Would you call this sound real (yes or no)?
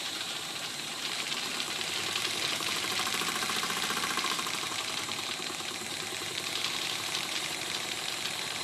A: no